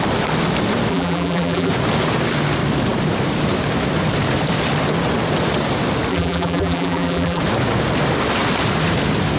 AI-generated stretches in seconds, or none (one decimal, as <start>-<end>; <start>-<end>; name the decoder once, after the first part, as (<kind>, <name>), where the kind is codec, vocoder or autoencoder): 0.9-1.7 (vocoder, BigVGAN v2); 6.1-7.4